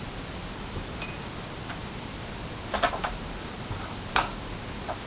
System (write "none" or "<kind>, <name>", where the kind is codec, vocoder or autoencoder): none